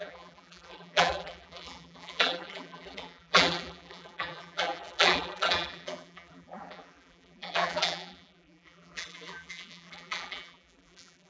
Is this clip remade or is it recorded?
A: remade